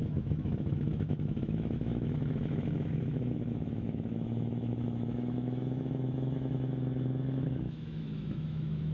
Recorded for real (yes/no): no